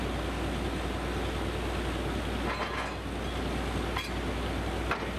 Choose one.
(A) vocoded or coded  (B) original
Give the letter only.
B